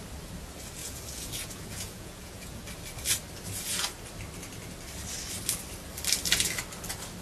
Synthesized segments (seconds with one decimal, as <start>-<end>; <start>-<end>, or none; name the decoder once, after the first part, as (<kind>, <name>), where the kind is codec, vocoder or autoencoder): 0.8-2.6 (vocoder, Vocos)